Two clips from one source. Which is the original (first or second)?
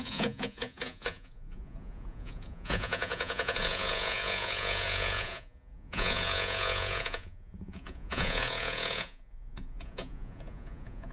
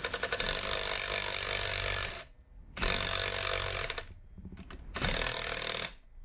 second